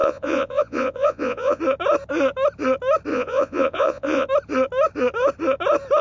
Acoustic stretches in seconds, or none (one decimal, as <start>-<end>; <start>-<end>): 1.6-3.1; 4.3-6.0